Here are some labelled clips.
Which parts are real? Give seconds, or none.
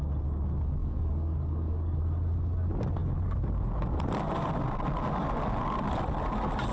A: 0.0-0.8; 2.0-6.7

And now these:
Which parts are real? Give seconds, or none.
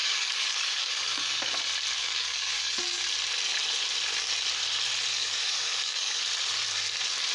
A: 1.6-2.0; 3.0-5.1; 6.2-7.3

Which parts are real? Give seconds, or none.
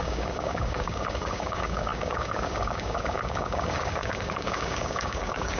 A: none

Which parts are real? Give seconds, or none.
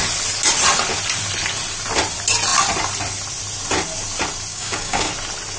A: 0.0-4.5; 5.1-5.6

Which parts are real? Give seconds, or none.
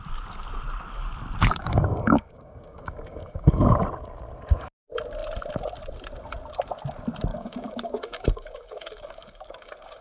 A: 0.0-1.4; 3.8-7.3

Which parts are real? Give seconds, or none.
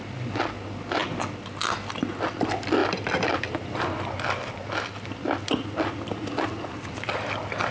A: 0.0-7.7